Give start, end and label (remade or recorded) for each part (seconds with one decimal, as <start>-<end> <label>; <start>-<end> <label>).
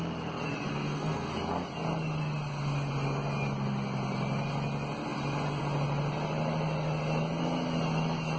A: 0.0-0.7 recorded; 0.7-1.3 remade; 1.3-8.4 recorded